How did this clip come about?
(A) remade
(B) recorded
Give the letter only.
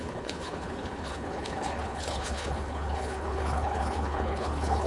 A